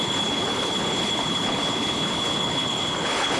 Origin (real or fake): fake